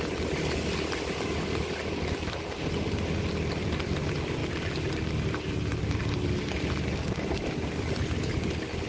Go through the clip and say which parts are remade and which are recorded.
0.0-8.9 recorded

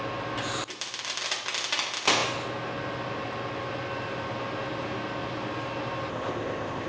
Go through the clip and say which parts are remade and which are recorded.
0.0-6.1 recorded; 6.1-6.9 remade

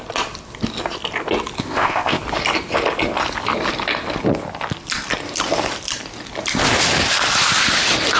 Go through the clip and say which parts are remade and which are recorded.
0.0-1.6 recorded; 1.6-2.2 remade; 2.2-8.2 recorded

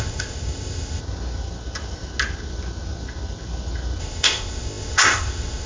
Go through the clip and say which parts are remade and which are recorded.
0.0-1.0 remade; 1.0-4.0 recorded; 4.0-5.7 remade

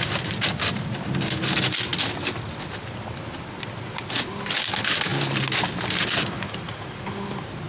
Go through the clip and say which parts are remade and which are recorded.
0.0-7.7 recorded